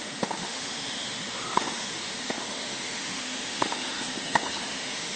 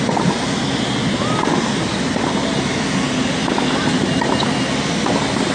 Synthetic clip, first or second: first